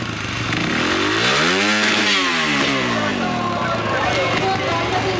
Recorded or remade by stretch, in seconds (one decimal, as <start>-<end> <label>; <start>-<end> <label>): 0.0-5.2 recorded